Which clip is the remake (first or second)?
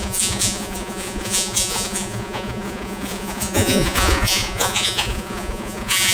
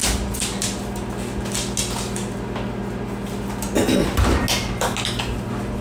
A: first